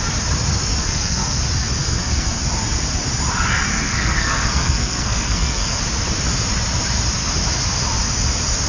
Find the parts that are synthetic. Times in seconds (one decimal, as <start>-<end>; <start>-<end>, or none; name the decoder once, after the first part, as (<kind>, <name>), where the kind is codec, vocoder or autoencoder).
0.8-1.4 (codec, SNAC); 1.8-2.4; 3.7-5.8